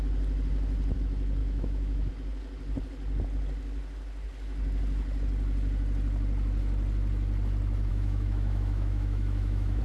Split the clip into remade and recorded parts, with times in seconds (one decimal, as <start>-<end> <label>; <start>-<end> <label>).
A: 0.0-1.4 recorded; 1.4-2.1 remade; 2.1-7.9 recorded; 7.9-9.8 remade